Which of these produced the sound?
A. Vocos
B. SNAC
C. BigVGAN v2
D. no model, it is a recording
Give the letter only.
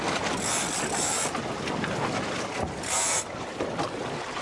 C